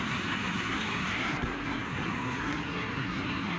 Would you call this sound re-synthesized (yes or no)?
yes